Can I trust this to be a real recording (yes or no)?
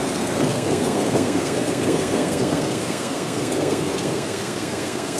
no